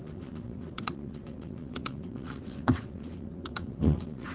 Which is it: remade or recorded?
remade